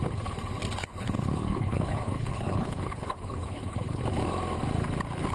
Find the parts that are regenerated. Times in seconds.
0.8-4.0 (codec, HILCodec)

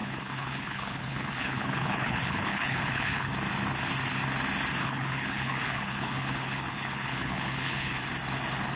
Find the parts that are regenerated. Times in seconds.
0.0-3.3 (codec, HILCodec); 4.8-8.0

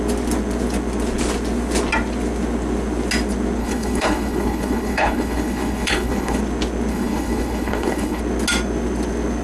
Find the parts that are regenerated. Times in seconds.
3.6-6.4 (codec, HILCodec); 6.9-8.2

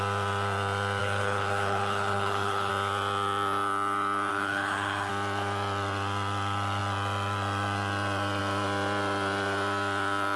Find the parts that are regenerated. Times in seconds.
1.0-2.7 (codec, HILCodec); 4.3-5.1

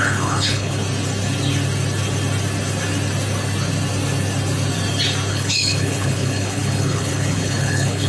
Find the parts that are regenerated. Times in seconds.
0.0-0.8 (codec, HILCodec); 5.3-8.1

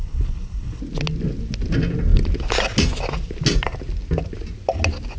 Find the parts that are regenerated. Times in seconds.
0.0-0.8 (codec, HILCodec)

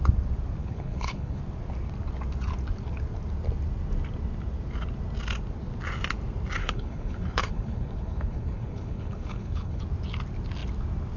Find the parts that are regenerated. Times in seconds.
0.6-1.4 (codec, HILCodec); 6.6-9.8

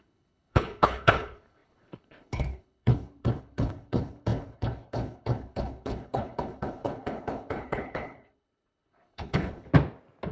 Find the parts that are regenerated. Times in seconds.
0.0-9.7 (codec, HILCodec)